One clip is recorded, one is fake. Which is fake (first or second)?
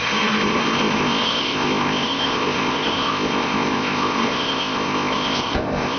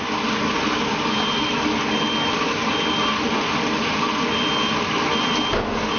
first